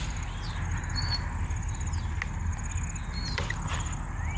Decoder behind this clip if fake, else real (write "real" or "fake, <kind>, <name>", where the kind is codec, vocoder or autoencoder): real